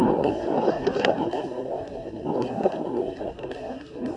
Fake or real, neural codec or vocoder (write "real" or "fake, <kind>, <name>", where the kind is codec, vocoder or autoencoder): fake, codec, SNAC